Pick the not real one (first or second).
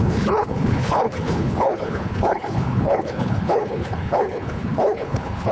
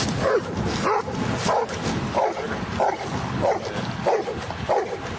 first